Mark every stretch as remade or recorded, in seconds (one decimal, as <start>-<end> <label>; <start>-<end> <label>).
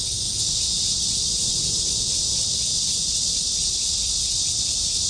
0.0-5.1 recorded